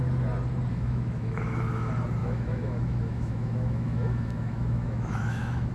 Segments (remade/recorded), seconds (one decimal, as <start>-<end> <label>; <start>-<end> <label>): 0.0-0.7 recorded; 0.7-1.6 remade; 1.6-2.2 recorded; 2.2-5.7 remade

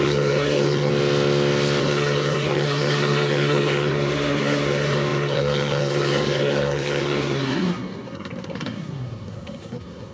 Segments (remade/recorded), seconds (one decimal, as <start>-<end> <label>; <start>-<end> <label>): 0.0-0.9 remade; 0.9-1.8 recorded; 1.8-10.1 remade